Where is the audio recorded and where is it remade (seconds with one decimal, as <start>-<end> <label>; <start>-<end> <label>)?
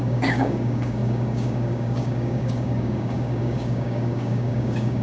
0.0-5.0 remade